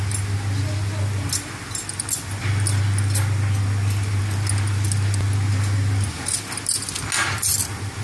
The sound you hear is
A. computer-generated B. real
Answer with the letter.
B